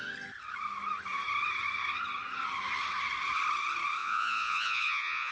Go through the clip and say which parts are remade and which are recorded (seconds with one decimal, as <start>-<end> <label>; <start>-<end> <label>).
0.0-4.0 recorded; 4.0-5.3 remade